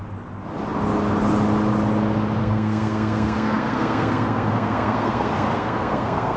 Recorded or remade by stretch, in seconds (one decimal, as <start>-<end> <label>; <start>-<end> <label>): 0.0-2.4 recorded; 2.4-6.4 remade